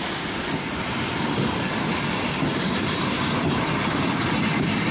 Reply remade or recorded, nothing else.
remade